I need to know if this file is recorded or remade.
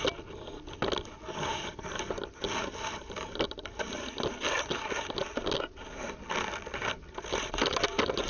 recorded